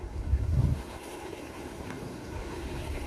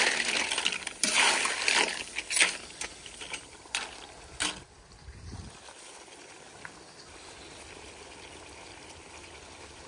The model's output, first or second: first